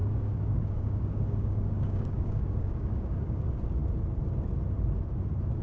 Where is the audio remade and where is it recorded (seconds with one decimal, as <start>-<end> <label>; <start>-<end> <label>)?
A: 0.0-3.4 remade; 3.4-5.6 recorded